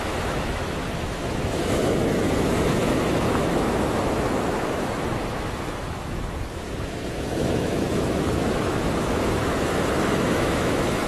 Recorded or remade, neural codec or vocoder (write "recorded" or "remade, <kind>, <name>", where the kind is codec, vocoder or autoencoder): remade, autoencoder, DAC-VAE